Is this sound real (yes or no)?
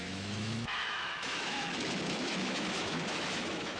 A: no